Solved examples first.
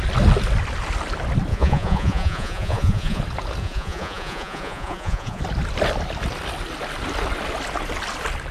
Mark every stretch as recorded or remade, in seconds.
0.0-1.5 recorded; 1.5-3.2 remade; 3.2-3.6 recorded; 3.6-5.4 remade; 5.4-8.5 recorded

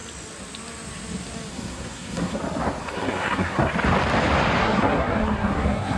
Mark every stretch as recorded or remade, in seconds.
0.0-1.5 recorded; 1.5-2.4 remade; 2.4-2.8 recorded; 2.8-3.7 remade; 3.7-4.6 recorded; 4.6-6.0 remade

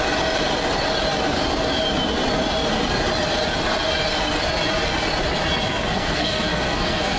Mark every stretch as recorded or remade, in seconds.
0.0-5.7 recorded; 5.7-7.2 remade

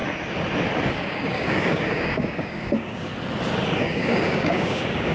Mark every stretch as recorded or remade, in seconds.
0.0-0.9 recorded; 0.9-3.1 remade; 3.1-3.8 recorded; 3.8-5.1 remade

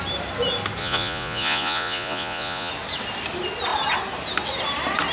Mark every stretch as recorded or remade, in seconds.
0.0-0.8 recorded; 0.8-2.7 remade; 2.7-5.1 recorded

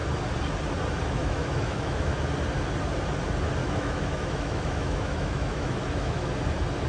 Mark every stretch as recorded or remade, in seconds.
0.0-1.2 recorded; 1.2-2.2 remade; 2.2-3.6 recorded; 3.6-6.3 remade; 6.3-6.9 recorded

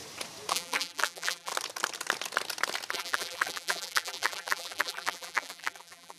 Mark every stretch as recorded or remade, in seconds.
0.0-0.5 recorded; 0.5-1.5 remade; 1.5-2.9 recorded; 2.9-6.2 remade